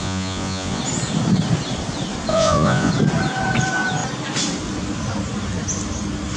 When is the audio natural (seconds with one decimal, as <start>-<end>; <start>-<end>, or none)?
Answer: 0.8-2.3; 2.9-6.4